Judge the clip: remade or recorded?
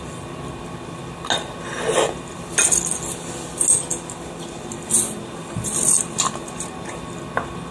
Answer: recorded